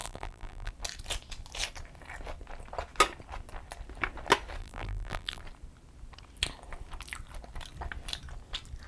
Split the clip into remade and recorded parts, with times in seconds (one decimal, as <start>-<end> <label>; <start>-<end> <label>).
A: 0.0-0.7 remade; 0.7-4.6 recorded; 4.6-5.4 remade; 5.4-8.9 recorded